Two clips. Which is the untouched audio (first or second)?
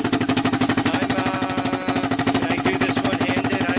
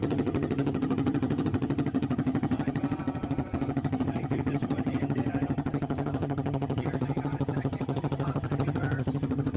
first